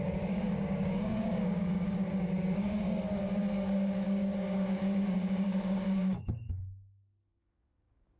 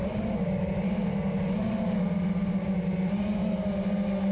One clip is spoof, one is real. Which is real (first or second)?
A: second